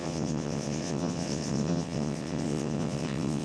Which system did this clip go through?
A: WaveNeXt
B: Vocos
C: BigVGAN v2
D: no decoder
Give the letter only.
A